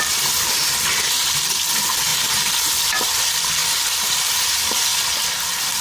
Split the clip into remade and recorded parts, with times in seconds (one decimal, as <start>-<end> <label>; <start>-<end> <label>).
0.0-3.6 remade; 3.6-4.1 recorded; 4.1-4.9 remade; 4.9-5.8 recorded